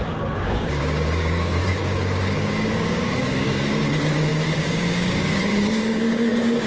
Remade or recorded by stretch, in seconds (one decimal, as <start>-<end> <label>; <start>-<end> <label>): 0.0-6.7 remade